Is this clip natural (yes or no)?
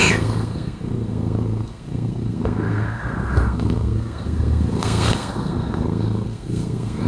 no